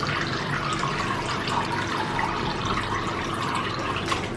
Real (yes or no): yes